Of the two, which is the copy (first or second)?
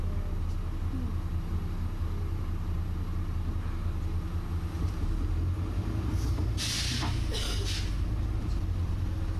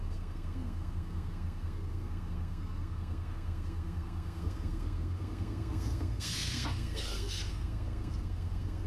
second